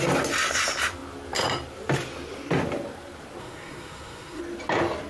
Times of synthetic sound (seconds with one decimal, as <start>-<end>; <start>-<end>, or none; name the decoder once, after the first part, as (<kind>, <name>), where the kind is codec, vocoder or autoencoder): 3.4-4.4 (codec, SNAC)